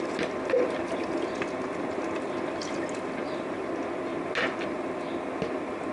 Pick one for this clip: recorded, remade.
recorded